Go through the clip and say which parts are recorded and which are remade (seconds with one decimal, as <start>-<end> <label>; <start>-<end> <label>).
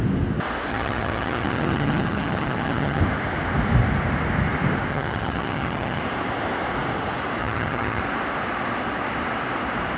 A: 0.0-0.7 recorded; 0.7-3.0 remade; 3.0-4.9 recorded; 4.9-6.0 remade; 6.0-7.4 recorded; 7.4-8.0 remade; 8.0-10.0 recorded